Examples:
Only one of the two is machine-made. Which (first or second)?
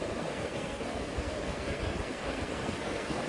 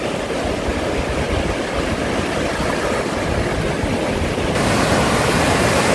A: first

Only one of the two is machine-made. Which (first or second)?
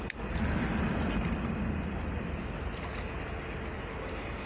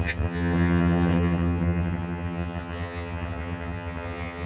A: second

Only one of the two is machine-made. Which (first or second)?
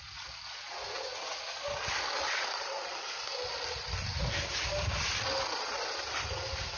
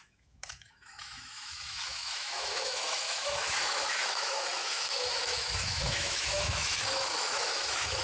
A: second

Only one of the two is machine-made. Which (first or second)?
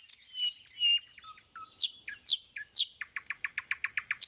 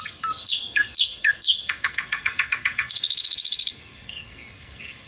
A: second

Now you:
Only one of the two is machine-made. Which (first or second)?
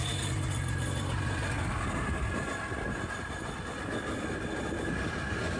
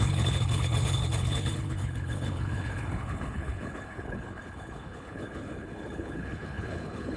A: second